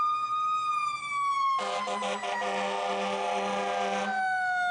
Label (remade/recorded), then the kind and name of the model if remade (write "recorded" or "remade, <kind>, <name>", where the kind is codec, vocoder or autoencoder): recorded